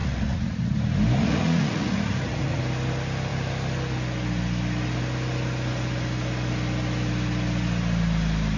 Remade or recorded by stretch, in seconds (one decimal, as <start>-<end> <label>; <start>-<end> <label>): 0.0-0.7 remade; 0.7-1.2 recorded; 1.2-2.6 remade; 2.6-8.6 recorded